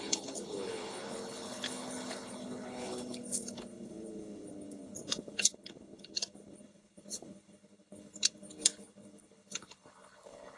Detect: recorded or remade remade